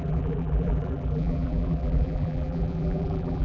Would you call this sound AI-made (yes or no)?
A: yes